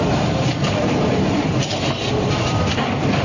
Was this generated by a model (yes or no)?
no